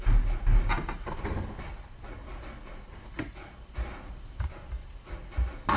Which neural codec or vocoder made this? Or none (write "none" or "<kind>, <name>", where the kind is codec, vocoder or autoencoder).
none